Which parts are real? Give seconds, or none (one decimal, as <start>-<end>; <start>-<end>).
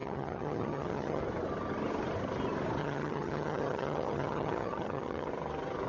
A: 1.2-2.8; 5.3-5.9